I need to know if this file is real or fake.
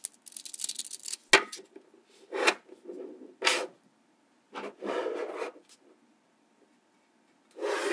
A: real